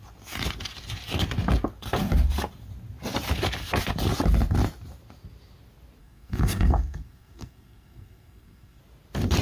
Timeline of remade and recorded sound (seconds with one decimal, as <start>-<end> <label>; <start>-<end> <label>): 0.0-6.0 recorded; 6.0-8.8 remade; 8.8-9.4 recorded